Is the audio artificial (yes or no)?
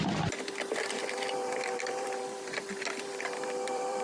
yes